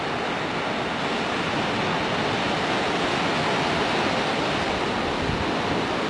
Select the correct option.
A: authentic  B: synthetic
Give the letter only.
A